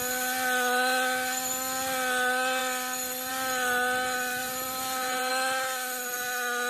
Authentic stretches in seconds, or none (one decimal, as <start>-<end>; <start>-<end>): 0.0-4.4; 5.3-6.7